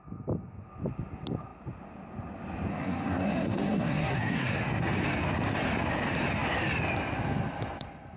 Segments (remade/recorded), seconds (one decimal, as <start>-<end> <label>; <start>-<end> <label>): 0.0-2.7 recorded; 2.7-4.6 remade; 4.6-8.2 recorded

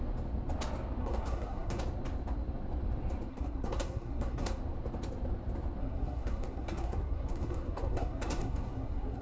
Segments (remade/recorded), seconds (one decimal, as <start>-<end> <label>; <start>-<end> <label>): 0.0-1.0 recorded; 1.0-1.8 remade; 1.8-3.3 recorded; 3.3-4.6 remade; 4.6-5.8 recorded; 5.8-9.2 remade

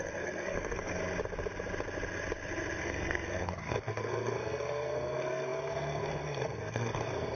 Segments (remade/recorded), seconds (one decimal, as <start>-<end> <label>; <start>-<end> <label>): 0.0-1.0 remade; 1.0-2.8 recorded; 2.8-7.4 remade

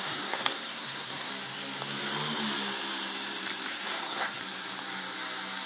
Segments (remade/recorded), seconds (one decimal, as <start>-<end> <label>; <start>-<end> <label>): 0.0-1.3 remade; 1.3-3.7 recorded; 3.7-4.4 remade; 4.4-5.7 recorded

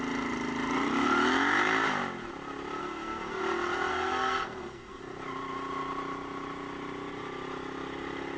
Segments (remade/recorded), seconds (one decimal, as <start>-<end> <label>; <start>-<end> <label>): 0.0-2.8 recorded; 2.8-3.4 remade; 3.4-3.9 recorded; 3.9-5.0 remade; 5.0-8.4 recorded

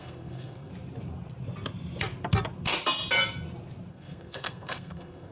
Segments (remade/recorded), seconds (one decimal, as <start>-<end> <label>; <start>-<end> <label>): 0.0-0.7 remade; 0.7-3.9 recorded; 3.9-5.3 remade